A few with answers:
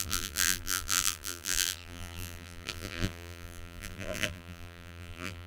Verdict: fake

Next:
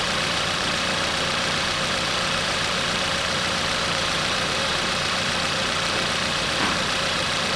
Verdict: fake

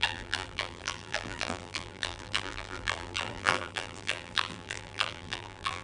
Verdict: fake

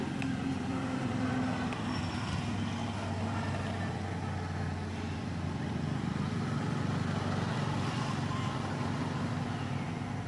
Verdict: real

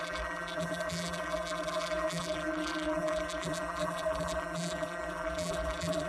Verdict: fake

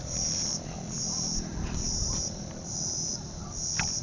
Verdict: fake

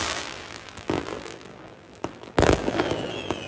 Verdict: fake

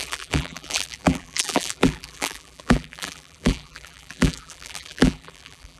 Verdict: fake